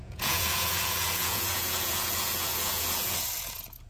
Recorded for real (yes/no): no